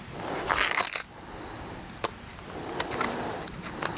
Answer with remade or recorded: recorded